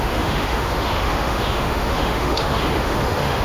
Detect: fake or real fake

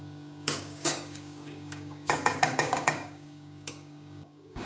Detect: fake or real fake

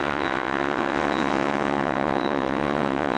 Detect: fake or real fake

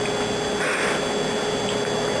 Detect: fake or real real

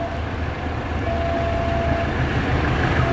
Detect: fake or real real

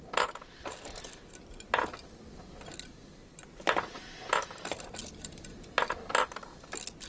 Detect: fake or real real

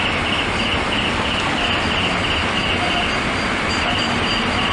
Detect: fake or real real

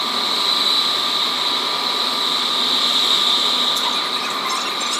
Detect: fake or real real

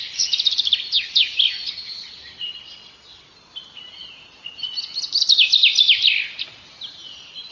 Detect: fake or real real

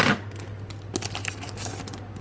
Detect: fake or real real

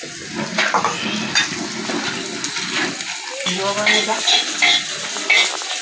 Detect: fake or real real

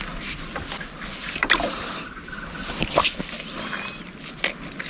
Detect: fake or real fake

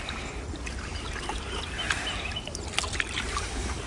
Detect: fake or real real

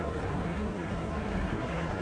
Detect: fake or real fake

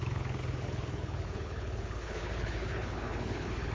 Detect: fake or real fake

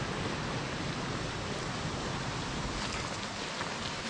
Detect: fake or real real